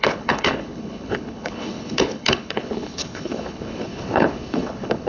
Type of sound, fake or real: fake